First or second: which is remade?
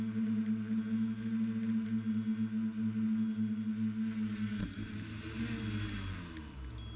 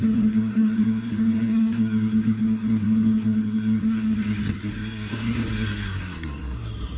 second